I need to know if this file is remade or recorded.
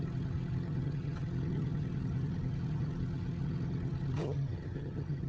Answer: remade